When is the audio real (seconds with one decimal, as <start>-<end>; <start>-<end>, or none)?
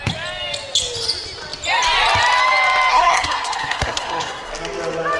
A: 0.0-2.9; 4.5-5.2